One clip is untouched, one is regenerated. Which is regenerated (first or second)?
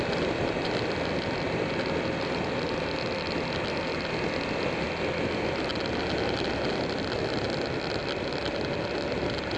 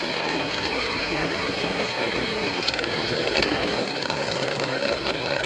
second